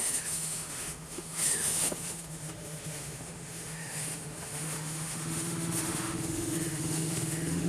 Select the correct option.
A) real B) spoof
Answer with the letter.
B